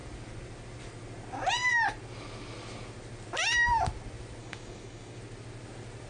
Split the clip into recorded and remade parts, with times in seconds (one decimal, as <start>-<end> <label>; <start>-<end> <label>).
0.0-4.4 recorded; 4.4-5.2 remade; 5.2-6.1 recorded